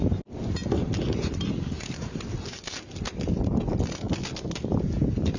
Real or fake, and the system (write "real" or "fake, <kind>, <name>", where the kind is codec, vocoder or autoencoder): real